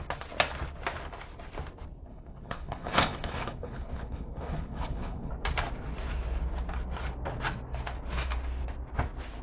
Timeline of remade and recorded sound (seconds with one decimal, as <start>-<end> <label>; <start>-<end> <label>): 0.0-2.1 recorded; 2.1-5.3 remade; 5.3-9.4 recorded